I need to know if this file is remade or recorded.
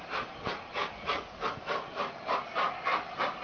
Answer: recorded